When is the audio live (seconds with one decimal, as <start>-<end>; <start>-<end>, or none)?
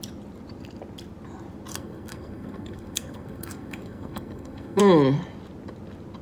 0.0-1.7; 4.8-6.2